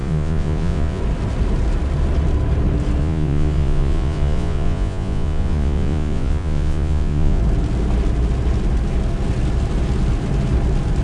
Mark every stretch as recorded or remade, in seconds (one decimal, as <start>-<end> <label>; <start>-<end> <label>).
0.0-1.0 remade; 1.0-3.0 recorded; 3.0-7.4 remade; 7.4-11.0 recorded